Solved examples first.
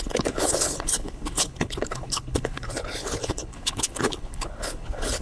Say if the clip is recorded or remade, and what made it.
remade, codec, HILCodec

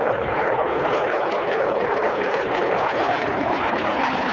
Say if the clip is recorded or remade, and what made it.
remade, codec, HILCodec